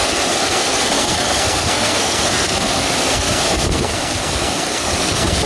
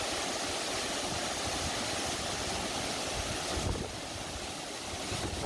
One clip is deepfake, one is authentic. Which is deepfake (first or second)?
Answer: first